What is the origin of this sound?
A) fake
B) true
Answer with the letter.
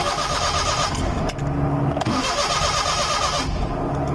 B